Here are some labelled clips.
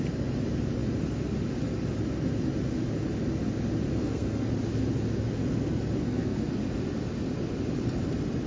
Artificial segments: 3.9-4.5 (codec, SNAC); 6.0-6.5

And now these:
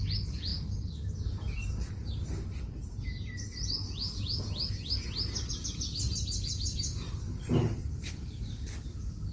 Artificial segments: none